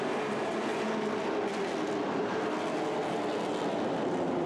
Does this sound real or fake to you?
real